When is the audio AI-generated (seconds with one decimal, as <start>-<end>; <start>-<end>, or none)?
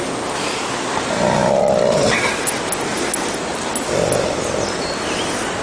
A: none